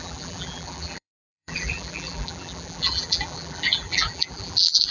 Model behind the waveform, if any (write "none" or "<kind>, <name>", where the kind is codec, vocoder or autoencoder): vocoder, BigVGAN v2